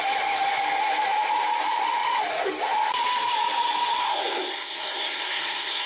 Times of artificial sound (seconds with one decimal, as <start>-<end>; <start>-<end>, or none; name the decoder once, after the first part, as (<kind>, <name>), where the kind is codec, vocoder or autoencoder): 4.0-5.9 (codec, SNAC)